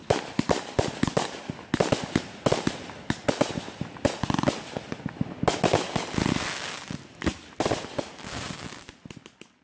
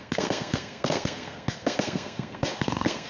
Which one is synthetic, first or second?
second